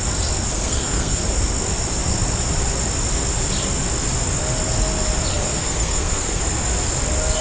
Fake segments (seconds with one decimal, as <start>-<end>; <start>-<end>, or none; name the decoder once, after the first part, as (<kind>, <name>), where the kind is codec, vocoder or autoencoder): 0.5-1.2 (codec, SNAC); 5.3-6.4